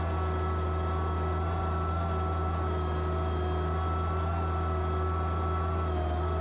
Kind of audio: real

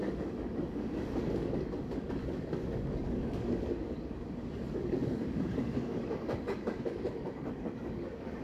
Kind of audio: fake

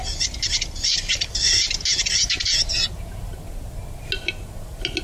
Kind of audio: real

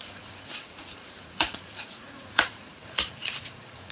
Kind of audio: fake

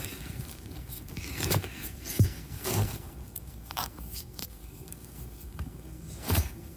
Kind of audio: fake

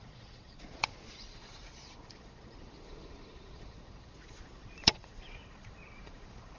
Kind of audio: fake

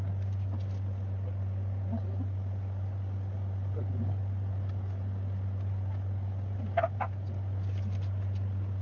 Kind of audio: real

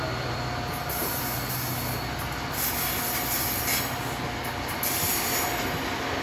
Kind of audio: real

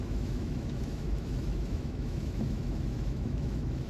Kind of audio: fake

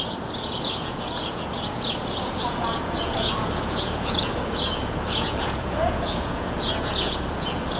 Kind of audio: fake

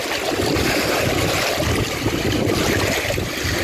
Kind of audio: real